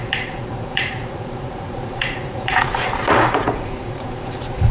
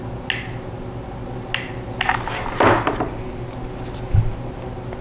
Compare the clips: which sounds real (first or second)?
second